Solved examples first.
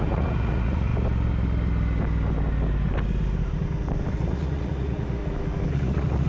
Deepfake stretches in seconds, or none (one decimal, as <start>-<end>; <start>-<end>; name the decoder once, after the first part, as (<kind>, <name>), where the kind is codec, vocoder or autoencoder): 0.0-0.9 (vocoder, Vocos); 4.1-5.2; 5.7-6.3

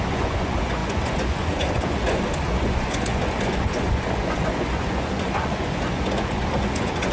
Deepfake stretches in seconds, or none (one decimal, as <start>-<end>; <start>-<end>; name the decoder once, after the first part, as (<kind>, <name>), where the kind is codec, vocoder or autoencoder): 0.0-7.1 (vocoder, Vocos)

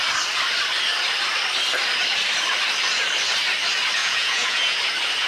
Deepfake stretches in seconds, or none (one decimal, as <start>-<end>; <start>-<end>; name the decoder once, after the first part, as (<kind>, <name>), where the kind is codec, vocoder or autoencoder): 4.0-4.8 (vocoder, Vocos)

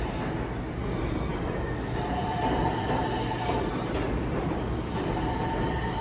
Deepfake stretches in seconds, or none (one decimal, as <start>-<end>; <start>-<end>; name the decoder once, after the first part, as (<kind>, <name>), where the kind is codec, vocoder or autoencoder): none

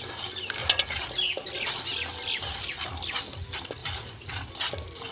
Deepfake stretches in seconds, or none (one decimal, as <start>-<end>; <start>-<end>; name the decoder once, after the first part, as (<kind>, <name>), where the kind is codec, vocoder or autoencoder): 3.8-4.5 (vocoder, Vocos)

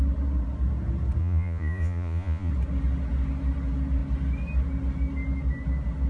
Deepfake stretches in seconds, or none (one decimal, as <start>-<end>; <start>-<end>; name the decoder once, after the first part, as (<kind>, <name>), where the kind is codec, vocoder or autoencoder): 1.2-2.5 (vocoder, Vocos)